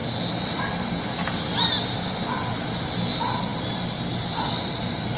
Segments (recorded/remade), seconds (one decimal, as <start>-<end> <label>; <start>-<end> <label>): 0.0-5.2 recorded